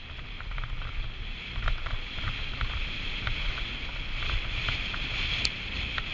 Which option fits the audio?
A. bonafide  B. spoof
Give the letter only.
A